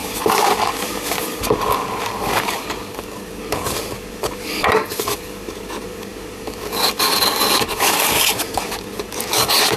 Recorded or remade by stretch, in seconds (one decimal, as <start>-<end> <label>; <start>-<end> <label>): 0.0-9.8 remade